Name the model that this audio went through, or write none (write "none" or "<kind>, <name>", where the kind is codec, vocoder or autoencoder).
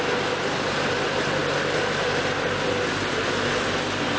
none